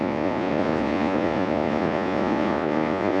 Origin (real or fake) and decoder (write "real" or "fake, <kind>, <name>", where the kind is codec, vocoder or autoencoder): fake, vocoder, Vocos